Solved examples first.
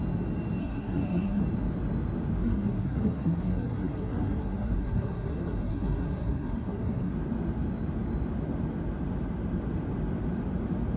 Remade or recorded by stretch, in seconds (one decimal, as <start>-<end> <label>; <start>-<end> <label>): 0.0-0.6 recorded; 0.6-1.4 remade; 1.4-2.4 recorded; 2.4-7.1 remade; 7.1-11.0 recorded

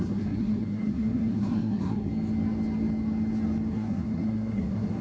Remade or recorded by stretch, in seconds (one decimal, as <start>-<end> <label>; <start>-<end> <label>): 0.0-2.1 remade; 2.1-3.7 recorded; 3.7-5.0 remade

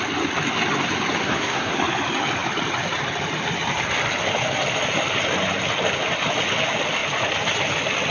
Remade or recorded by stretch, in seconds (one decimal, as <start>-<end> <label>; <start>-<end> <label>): 0.0-1.2 recorded; 1.2-1.8 remade; 1.8-8.1 recorded

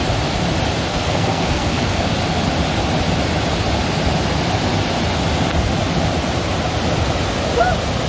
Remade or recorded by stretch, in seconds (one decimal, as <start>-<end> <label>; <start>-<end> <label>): 0.0-0.9 recorded; 0.9-2.1 remade; 2.1-8.1 recorded

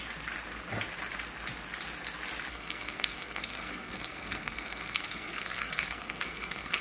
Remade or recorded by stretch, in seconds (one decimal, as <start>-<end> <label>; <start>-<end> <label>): 0.0-2.5 recorded; 2.5-6.8 remade

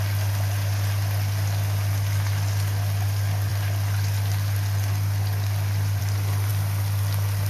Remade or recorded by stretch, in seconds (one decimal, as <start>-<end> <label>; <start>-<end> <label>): 0.0-7.5 recorded